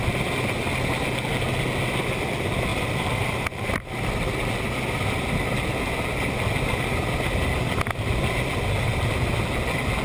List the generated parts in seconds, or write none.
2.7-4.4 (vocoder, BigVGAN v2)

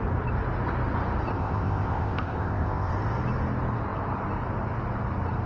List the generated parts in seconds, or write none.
1.3-2.9 (codec, ZipCodec)

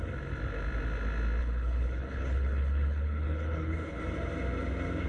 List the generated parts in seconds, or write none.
1.4-4.0 (codec, HILCodec)

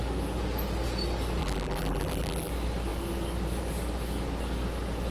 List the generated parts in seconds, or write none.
1.4-2.5 (vocoder, BigVGAN v2)

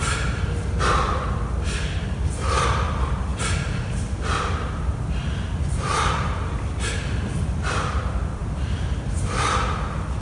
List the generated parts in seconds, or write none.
0.0-10.2 (vocoder, BigVGAN v2)

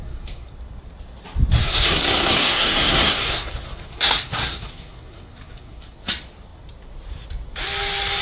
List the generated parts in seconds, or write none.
0.0-0.5 (codec, SNAC); 1.6-6.0

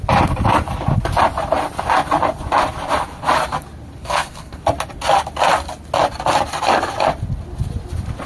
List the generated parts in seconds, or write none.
4.0-4.6 (codec, SNAC)

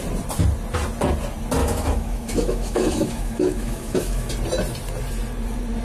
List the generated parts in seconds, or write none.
1.6-4.3 (autoencoder, DAC-VAE)